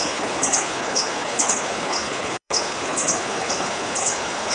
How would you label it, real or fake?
fake